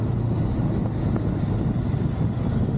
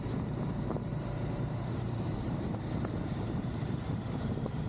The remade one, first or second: second